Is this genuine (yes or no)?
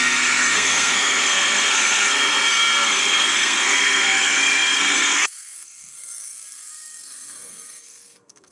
no